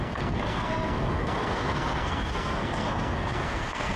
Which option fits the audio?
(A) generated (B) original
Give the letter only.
A